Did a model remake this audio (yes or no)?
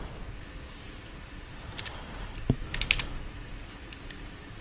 no